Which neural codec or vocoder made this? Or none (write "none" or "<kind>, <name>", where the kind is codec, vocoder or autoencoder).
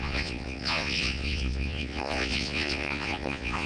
vocoder, Vocos